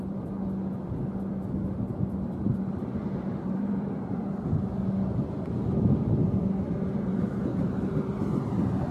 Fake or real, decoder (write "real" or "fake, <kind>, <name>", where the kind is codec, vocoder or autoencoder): fake, vocoder, BigVGAN v2